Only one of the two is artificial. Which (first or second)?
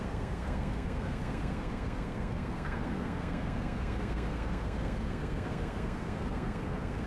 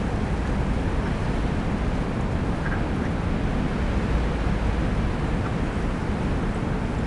first